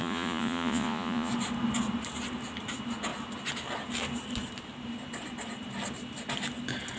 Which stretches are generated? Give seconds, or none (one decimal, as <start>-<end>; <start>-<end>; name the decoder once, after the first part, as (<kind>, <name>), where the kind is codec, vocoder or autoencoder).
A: 0.0-1.3 (vocoder, Vocos)